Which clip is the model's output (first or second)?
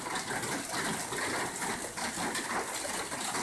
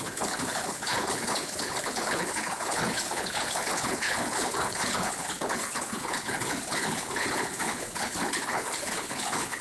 second